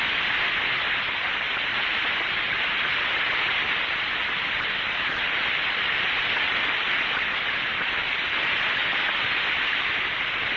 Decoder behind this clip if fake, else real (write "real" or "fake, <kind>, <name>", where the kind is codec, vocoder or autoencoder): real